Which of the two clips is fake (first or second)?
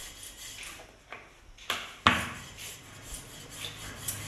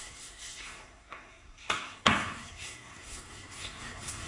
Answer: second